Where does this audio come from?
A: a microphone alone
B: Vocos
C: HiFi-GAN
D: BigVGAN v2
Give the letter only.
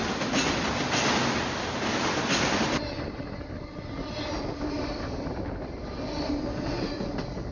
A